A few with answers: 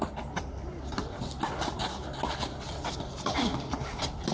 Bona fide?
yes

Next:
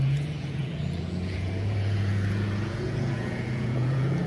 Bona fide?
no